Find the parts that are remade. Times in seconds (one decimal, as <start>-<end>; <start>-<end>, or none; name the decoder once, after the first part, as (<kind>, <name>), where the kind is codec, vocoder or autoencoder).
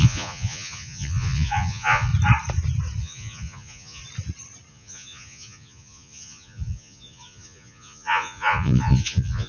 0.0-2.1 (vocoder, Vocos); 3.0-4.0; 4.7-9.5